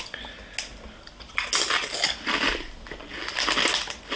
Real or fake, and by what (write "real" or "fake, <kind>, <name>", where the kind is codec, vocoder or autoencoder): real